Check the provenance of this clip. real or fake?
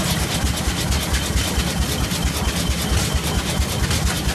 real